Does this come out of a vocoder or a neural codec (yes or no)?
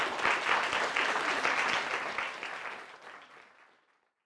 no